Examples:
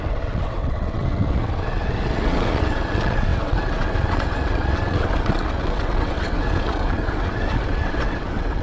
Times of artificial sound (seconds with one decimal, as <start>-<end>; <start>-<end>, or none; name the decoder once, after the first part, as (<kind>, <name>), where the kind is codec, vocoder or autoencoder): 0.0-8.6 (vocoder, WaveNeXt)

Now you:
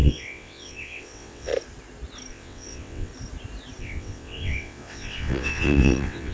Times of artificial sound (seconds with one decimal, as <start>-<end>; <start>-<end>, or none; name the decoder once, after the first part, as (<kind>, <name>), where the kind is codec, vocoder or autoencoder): 0.0-1.5 (vocoder, WaveNeXt); 2.3-3.1; 3.8-6.3

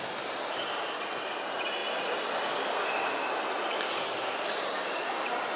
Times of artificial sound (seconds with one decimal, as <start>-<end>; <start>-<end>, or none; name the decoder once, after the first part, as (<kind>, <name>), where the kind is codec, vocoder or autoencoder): none

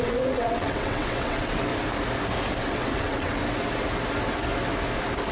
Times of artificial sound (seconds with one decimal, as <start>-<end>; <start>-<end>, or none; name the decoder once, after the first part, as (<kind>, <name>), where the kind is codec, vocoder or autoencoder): 0.0-1.7 (vocoder, WaveNeXt); 2.6-3.4